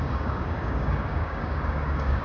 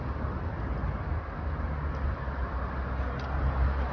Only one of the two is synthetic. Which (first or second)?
first